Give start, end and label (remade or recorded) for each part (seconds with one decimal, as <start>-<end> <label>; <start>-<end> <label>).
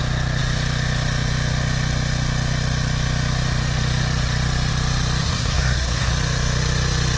0.0-5.2 recorded; 5.2-6.1 remade; 6.1-7.2 recorded